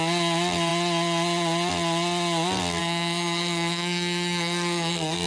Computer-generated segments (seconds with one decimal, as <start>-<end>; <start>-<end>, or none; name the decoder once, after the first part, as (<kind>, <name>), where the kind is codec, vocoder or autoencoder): 2.8-5.3 (codec, SNAC)